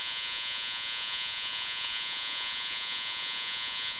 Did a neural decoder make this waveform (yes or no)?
yes